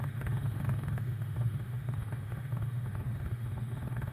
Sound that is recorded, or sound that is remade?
remade